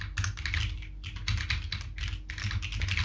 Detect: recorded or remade recorded